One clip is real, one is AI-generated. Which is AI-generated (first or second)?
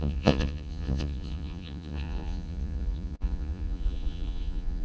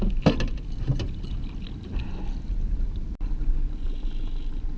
first